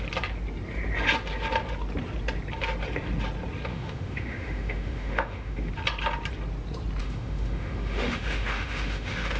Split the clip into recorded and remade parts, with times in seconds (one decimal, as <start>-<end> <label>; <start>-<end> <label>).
0.0-3.7 recorded; 3.7-5.7 remade; 5.7-7.0 recorded; 7.0-9.4 remade